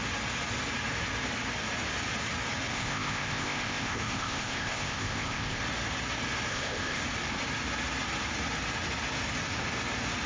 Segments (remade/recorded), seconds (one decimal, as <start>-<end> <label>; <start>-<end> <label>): 0.0-2.7 recorded; 2.7-5.6 remade; 5.6-6.5 recorded; 6.5-7.0 remade; 7.0-10.3 recorded